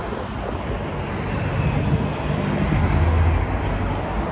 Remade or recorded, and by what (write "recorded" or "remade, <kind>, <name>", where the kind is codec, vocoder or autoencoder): recorded